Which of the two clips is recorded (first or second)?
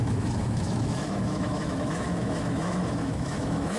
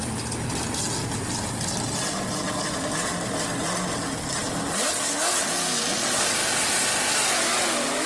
second